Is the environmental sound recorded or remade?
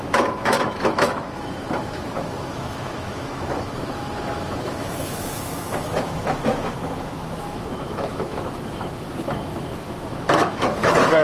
remade